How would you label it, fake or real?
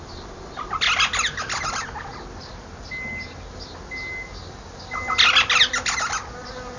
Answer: real